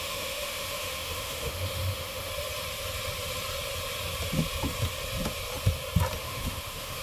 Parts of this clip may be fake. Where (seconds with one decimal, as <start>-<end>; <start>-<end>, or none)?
0.0-2.3; 6.2-7.0